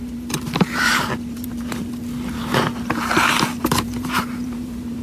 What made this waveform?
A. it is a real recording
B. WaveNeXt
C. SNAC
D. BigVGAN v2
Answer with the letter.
D